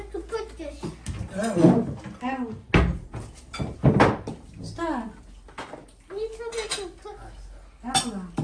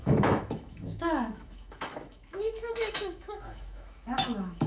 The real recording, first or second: first